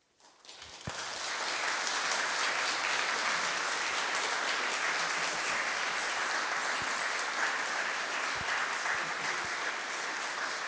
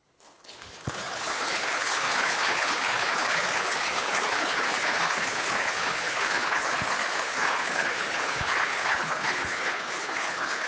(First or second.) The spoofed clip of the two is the second